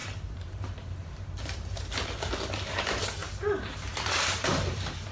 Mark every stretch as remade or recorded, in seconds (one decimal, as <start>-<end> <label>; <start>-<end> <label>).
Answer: 0.0-2.3 remade; 2.3-3.2 recorded; 3.2-5.1 remade

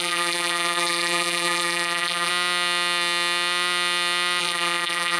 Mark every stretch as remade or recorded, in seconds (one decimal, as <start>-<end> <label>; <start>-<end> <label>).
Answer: 0.0-2.3 remade; 2.3-4.4 recorded; 4.4-5.2 remade

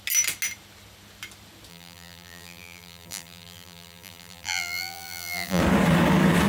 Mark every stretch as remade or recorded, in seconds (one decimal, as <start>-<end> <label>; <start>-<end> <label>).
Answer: 0.0-1.7 recorded; 1.7-5.6 remade; 5.6-6.5 recorded

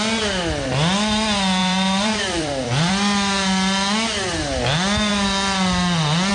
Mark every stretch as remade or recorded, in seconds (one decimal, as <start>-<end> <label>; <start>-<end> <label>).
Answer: 0.0-1.6 recorded; 1.6-2.9 remade; 2.9-6.3 recorded